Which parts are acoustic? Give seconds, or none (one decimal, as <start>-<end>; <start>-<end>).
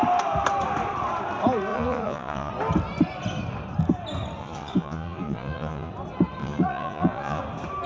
0.0-1.7; 2.5-4.4; 5.9-6.4; 7.4-7.9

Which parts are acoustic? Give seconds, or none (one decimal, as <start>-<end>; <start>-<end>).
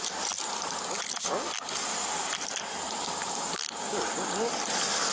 0.0-1.8; 2.8-5.1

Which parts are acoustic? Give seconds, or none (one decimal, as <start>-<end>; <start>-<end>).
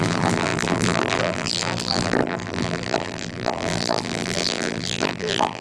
none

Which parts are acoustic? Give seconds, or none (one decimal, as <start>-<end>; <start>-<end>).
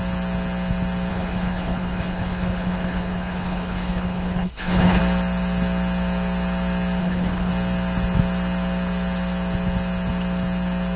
0.0-1.1; 5.0-7.0; 7.5-11.0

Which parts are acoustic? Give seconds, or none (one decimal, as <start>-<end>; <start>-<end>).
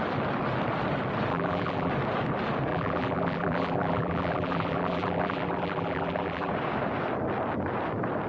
0.0-1.3; 1.9-2.7; 6.5-8.3